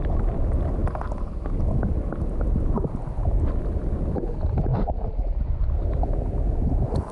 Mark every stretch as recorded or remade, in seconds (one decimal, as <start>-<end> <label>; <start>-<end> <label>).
0.0-7.1 recorded